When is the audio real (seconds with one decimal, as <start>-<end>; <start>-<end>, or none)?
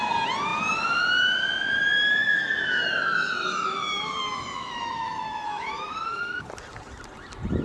0.0-2.2; 6.5-7.6